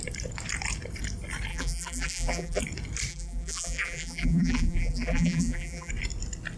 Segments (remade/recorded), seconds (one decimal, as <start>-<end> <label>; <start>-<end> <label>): 0.0-1.5 recorded; 1.5-2.6 remade; 2.6-3.1 recorded; 3.1-5.9 remade; 5.9-6.6 recorded